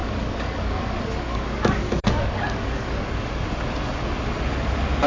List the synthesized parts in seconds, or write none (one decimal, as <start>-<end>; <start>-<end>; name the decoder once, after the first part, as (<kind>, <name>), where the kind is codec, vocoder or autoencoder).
0.0-2.9 (codec, DAC)